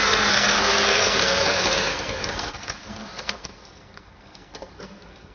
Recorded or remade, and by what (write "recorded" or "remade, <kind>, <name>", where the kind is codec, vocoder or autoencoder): remade, codec, SNAC